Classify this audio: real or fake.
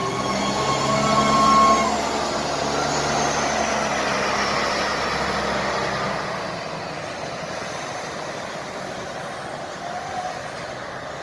real